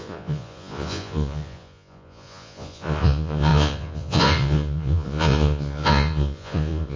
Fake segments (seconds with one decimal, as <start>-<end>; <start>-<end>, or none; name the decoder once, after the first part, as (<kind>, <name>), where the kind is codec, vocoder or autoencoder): 0.0-7.0 (vocoder, Vocos)